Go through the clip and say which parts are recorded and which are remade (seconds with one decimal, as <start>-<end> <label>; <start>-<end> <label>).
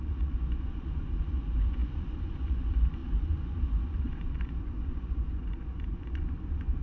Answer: 0.0-6.8 remade